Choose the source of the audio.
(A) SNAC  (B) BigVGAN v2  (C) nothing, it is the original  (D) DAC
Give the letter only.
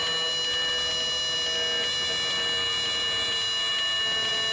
C